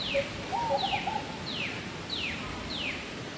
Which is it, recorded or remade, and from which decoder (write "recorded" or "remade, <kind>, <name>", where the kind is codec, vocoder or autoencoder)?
remade, vocoder, BigVGAN v2